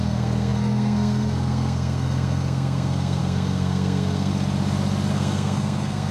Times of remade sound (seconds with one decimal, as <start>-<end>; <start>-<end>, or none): 0.0-4.3; 5.1-6.1

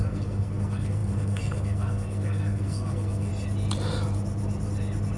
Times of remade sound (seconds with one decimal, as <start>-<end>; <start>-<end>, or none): 0.0-3.3

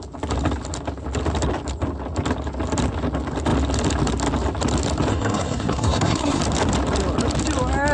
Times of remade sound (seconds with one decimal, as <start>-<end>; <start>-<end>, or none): 5.1-6.4